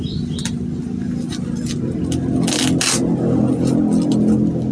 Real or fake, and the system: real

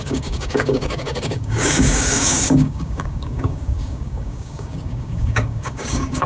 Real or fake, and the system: fake, codec, DAC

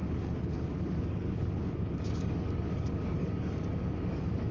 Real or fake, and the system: fake, codec, DAC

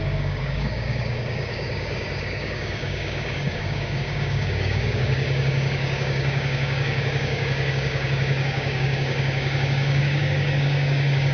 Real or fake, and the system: fake, codec, DAC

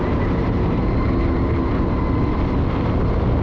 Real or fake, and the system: real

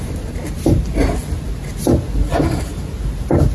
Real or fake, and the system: real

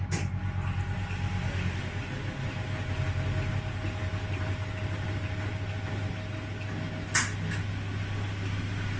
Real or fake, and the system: real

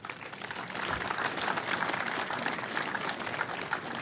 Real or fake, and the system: real